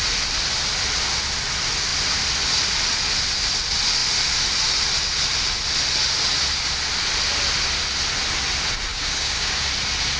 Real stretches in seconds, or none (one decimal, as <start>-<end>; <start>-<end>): 0.0-8.9; 9.7-10.2